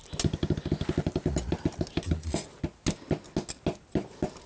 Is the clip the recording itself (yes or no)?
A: yes